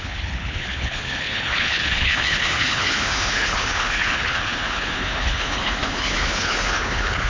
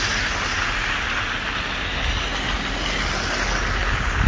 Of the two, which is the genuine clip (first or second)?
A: second